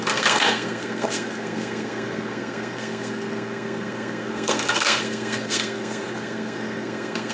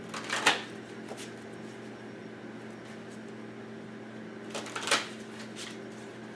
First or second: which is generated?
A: first